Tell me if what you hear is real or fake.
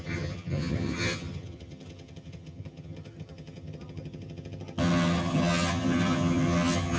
fake